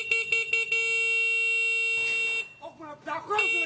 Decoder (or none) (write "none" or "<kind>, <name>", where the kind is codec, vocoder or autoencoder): none